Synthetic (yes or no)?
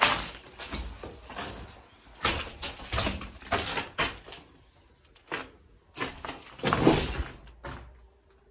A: no